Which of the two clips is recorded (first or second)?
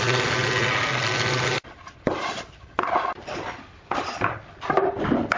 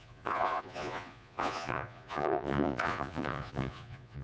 first